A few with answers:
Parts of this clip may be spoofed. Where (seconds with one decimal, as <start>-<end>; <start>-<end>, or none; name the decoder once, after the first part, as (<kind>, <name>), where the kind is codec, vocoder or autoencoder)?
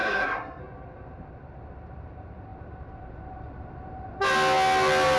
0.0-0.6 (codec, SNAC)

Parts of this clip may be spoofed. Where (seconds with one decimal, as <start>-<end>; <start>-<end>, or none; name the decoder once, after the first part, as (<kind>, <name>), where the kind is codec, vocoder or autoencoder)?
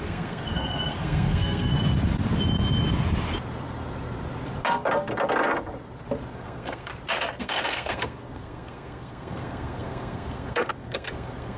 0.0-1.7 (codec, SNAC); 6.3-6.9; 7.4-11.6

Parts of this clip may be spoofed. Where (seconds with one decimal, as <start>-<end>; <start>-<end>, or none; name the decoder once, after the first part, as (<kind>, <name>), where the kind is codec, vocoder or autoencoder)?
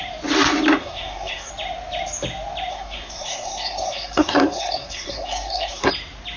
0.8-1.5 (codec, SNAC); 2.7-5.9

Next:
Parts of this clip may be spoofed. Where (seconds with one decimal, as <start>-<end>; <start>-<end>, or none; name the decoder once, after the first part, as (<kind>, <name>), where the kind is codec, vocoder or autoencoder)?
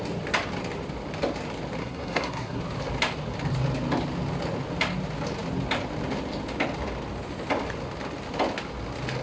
1.8-2.6 (codec, SNAC)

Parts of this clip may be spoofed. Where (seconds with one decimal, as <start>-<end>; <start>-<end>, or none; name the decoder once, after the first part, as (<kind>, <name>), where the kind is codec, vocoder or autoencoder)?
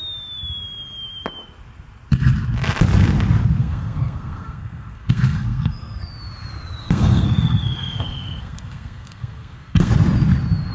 3.6-6.1 (codec, SNAC); 6.8-9.9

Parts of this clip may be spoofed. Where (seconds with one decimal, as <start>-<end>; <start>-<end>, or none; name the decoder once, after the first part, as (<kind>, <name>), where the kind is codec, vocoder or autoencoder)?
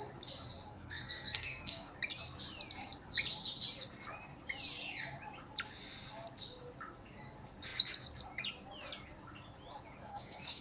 0.7-1.9 (codec, SNAC); 10.1-10.6